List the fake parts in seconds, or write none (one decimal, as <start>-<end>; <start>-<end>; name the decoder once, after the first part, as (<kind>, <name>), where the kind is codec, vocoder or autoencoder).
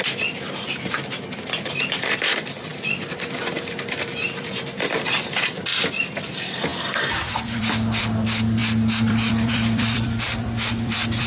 0.0-5.7 (vocoder, BigVGAN v2); 6.2-8.6; 9.1-11.3